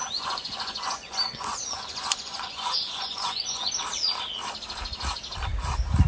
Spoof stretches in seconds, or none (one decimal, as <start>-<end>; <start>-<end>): 0.0-3.7